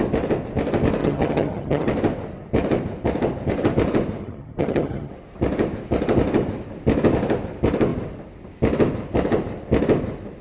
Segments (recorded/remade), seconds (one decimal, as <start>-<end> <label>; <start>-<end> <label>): 0.0-1.0 recorded; 1.0-1.9 remade; 1.9-4.2 recorded; 4.2-5.1 remade; 5.1-10.4 recorded